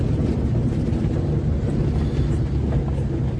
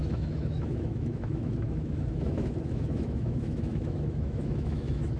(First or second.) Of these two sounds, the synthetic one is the second